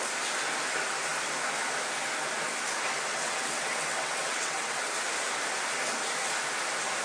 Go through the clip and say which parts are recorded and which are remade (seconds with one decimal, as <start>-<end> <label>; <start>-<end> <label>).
0.0-3.1 recorded; 3.1-5.0 remade; 5.0-7.0 recorded